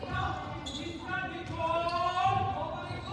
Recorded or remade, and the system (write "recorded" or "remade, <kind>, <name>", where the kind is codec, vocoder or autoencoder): recorded